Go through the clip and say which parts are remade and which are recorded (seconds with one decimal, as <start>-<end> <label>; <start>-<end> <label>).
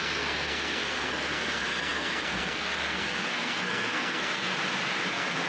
0.0-4.5 remade; 4.5-5.1 recorded; 5.1-5.5 remade